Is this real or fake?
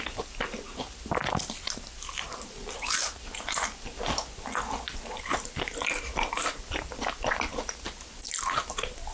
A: real